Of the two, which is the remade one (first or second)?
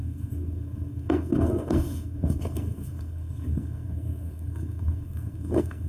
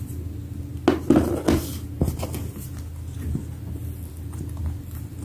first